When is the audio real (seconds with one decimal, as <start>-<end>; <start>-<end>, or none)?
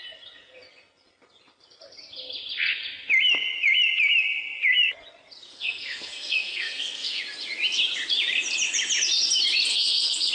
0.0-5.5; 7.2-9.7